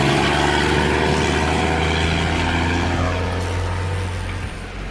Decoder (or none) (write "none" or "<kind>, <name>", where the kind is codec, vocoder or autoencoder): none